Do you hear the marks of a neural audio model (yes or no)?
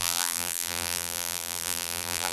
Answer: yes